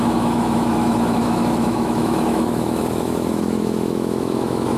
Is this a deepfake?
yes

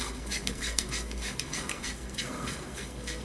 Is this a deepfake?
yes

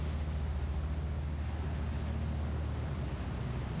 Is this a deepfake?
no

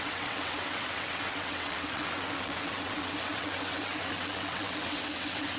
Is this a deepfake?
yes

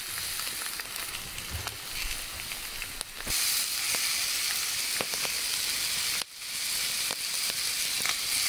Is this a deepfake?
no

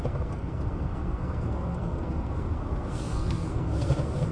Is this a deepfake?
yes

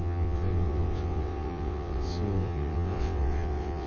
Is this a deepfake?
yes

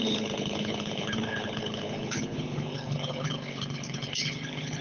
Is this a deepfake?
yes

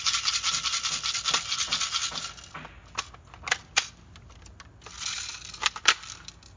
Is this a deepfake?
no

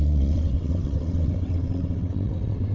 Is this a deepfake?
yes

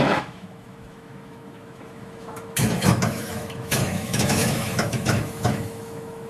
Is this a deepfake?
yes